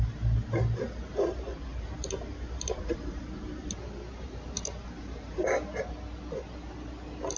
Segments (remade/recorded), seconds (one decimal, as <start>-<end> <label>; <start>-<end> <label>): 0.0-1.7 recorded; 1.7-5.5 remade; 5.5-7.4 recorded